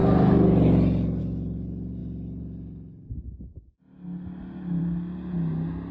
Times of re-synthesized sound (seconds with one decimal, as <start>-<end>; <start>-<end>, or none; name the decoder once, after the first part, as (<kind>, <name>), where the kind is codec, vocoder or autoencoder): none